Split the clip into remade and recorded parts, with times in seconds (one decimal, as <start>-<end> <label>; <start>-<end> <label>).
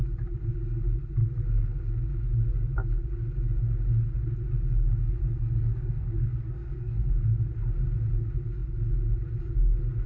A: 0.0-5.0 recorded; 5.0-7.1 remade; 7.1-10.1 recorded